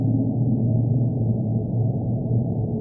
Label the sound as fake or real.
fake